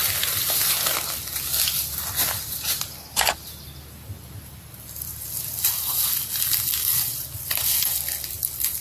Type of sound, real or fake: real